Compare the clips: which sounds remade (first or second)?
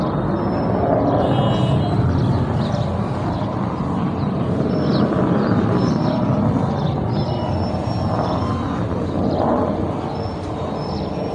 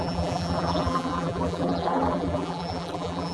second